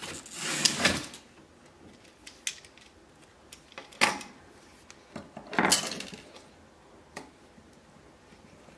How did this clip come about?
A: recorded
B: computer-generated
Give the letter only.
A